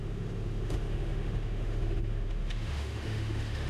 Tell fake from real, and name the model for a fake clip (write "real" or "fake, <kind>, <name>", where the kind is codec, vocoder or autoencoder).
fake, autoencoder, DAC-VAE